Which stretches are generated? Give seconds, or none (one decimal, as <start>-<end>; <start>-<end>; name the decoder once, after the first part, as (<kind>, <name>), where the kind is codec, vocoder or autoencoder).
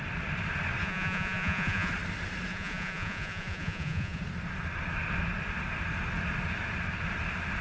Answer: 0.8-1.9 (vocoder, Vocos); 2.5-4.2